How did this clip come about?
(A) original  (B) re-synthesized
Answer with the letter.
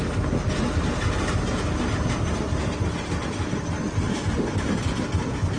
A